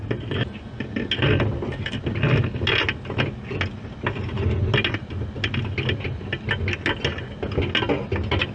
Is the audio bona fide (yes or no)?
yes